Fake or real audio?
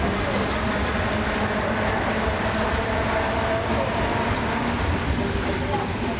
real